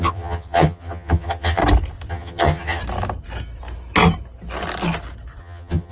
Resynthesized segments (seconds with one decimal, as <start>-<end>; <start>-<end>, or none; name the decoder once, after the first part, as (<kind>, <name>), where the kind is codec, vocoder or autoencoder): 0.0-1.6 (vocoder, HiFi-GAN); 2.1-2.8; 5.4-5.9